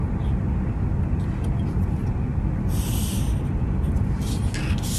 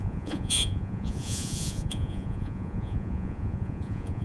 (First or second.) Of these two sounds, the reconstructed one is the second